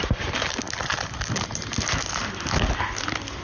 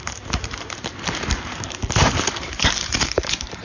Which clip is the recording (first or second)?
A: first